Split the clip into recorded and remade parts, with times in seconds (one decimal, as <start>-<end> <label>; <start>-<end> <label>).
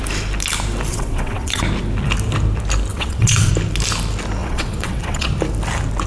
0.0-0.9 recorded; 0.9-1.6 remade; 1.6-2.9 recorded; 2.9-3.5 remade; 3.5-4.4 recorded; 4.4-5.3 remade; 5.3-6.1 recorded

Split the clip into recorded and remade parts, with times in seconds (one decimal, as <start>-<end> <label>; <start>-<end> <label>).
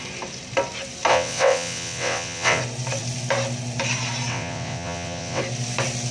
0.0-1.1 recorded; 1.1-2.6 remade; 2.6-4.3 recorded; 4.3-5.4 remade; 5.4-6.1 recorded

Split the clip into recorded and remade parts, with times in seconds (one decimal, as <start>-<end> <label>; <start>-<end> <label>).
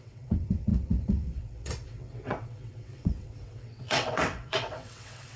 0.0-5.4 remade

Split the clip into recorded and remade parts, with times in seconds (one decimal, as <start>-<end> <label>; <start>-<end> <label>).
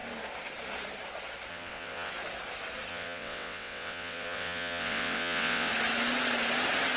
0.0-1.5 recorded; 1.5-2.1 remade; 2.1-2.9 recorded; 2.9-5.7 remade; 5.7-7.0 recorded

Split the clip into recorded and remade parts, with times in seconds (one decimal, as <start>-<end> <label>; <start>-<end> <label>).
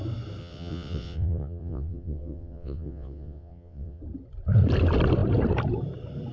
0.0-0.4 recorded; 0.4-4.0 remade; 4.0-6.3 recorded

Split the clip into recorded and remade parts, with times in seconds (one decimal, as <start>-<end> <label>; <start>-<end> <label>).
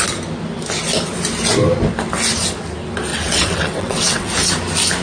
0.0-3.1 recorded; 3.1-4.3 remade; 4.3-5.0 recorded